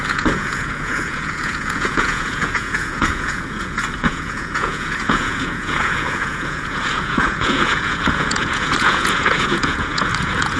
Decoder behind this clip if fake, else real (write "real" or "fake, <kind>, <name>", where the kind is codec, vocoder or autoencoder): fake, vocoder, Vocos